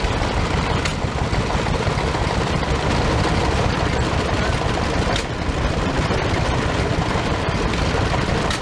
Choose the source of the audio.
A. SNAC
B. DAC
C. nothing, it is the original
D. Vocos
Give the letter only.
C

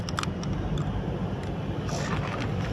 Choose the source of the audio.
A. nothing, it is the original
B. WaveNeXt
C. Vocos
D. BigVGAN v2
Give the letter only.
A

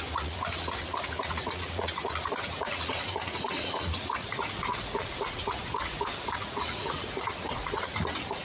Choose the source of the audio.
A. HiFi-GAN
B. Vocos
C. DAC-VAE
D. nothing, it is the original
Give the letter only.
B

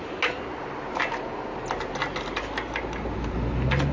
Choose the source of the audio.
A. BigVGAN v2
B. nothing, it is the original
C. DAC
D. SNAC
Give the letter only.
B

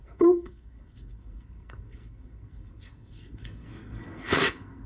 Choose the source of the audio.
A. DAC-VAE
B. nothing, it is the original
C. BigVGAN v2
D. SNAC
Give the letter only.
D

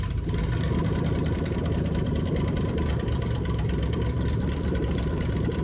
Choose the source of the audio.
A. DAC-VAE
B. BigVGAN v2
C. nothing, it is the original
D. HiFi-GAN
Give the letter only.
B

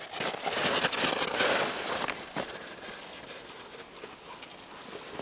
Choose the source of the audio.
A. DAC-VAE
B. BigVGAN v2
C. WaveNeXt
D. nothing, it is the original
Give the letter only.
D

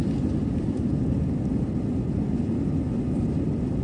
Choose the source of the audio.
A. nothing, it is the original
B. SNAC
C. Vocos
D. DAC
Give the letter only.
A